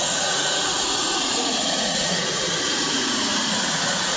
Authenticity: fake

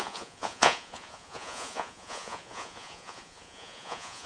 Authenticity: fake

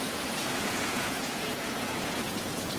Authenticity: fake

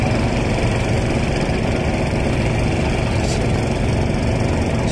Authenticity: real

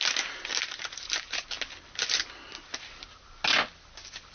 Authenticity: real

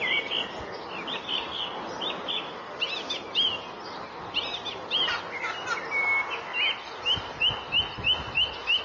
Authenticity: real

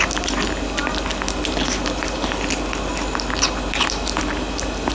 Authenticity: real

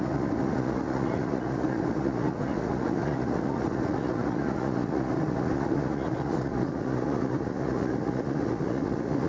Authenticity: fake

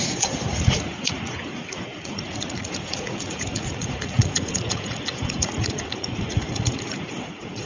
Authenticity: fake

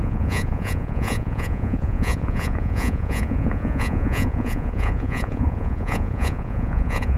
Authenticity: fake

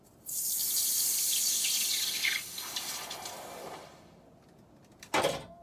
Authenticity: real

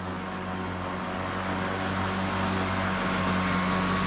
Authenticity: real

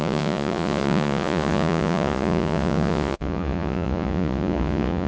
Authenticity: fake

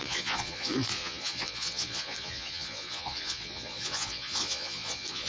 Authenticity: fake